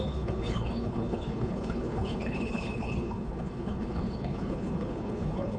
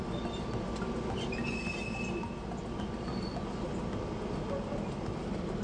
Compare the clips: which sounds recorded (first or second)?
second